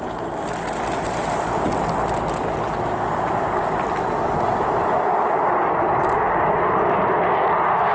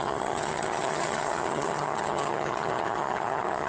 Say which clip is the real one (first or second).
first